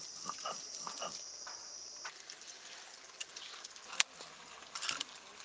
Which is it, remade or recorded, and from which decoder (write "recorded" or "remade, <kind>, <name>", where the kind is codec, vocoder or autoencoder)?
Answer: remade, vocoder, BigVGAN v2